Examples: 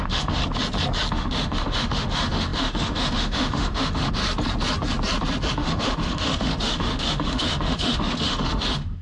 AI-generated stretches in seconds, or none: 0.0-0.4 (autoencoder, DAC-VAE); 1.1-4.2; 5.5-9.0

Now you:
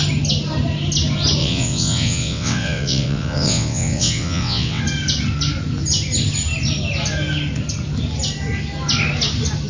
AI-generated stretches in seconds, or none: 1.4-4.8 (vocoder, WaveNeXt)

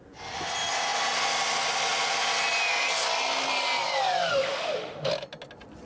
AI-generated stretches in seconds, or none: 4.3-5.1 (autoencoder, DAC-VAE)

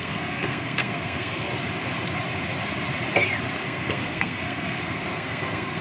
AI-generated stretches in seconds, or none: 0.0-1.5 (codec, SNAC); 3.6-5.8